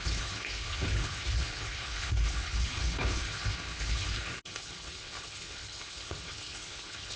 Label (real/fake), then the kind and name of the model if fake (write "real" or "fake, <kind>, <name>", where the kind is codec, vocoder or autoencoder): fake, codec, HILCodec